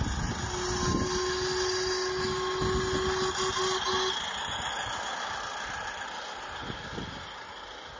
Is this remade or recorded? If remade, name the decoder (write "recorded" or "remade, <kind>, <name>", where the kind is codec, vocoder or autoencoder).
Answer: recorded